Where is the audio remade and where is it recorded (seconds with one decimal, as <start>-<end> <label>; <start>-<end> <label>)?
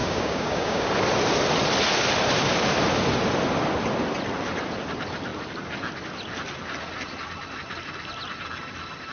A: 0.0-0.9 remade; 0.9-9.1 recorded